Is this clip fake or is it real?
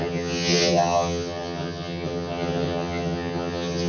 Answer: fake